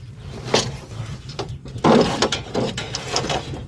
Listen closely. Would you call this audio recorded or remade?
recorded